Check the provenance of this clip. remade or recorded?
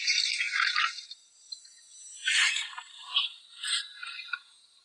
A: remade